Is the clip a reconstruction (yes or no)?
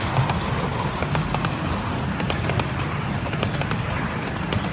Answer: no